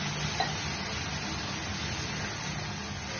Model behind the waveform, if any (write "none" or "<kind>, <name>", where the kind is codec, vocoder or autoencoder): none